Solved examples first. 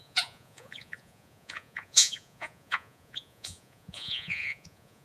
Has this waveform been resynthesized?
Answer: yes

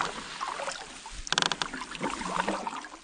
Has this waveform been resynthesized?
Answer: no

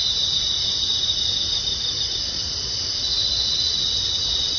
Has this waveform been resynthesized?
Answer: no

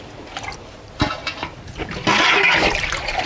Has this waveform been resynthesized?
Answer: no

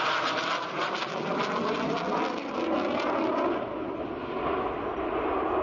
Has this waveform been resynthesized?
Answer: no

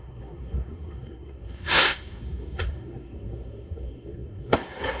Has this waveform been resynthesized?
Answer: yes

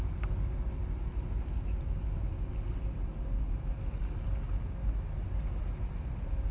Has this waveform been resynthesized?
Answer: no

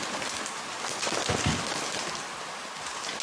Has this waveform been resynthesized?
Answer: no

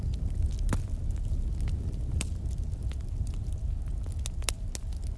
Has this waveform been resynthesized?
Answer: no